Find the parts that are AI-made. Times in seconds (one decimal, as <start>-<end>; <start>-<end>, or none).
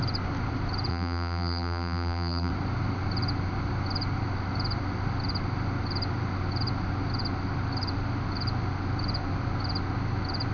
0.9-2.5